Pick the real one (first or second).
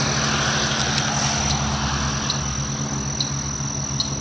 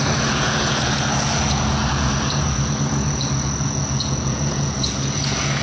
first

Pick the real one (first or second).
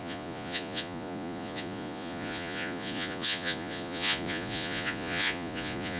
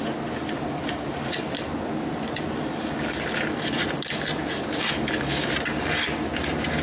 second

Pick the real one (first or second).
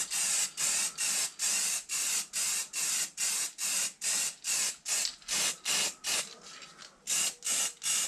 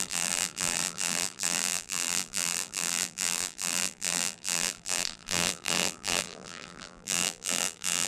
first